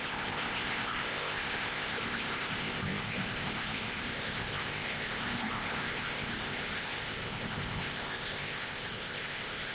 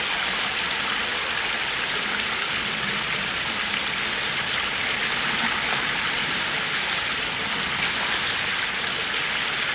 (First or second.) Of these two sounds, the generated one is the first